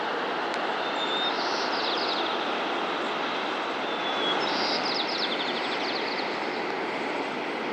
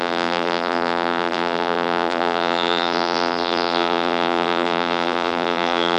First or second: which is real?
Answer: first